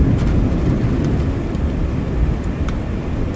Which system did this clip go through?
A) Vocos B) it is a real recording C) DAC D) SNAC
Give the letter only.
B